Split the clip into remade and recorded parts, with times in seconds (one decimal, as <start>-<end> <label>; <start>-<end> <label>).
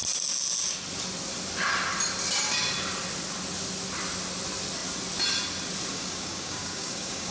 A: 0.0-5.9 recorded; 5.9-7.3 remade